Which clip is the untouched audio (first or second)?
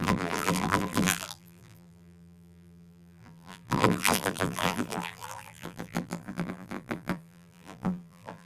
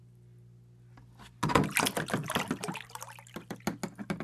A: second